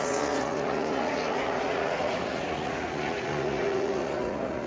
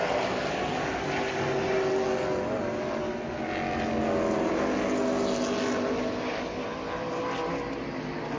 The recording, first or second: second